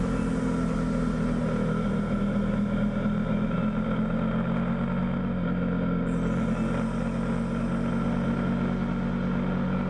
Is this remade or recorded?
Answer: recorded